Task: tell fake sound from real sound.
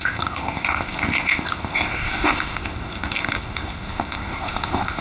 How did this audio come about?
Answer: fake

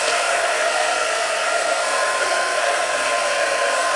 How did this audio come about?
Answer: fake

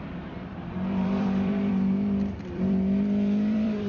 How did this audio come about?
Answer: fake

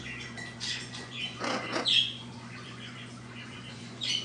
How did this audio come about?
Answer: fake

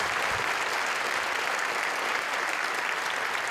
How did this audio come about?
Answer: real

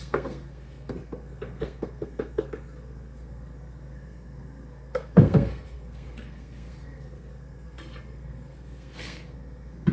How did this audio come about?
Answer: fake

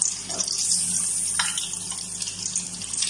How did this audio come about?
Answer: real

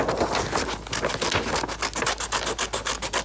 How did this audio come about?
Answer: real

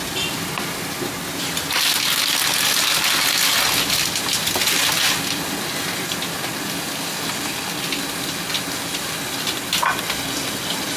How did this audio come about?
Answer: real